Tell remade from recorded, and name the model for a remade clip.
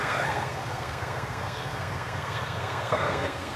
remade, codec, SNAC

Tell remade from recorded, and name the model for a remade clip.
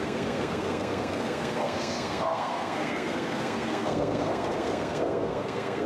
remade, codec, SNAC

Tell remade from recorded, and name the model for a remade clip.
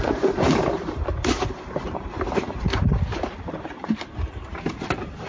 remade, vocoder, BigVGAN v2